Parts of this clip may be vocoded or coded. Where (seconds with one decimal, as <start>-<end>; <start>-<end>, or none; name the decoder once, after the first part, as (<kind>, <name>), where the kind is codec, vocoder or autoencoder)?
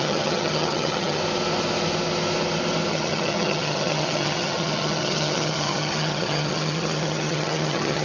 0.0-1.2 (vocoder, HiFi-GAN); 2.9-8.0